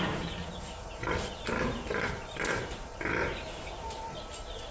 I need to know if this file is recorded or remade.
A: remade